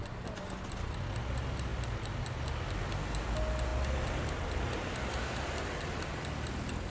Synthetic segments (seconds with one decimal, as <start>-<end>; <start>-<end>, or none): none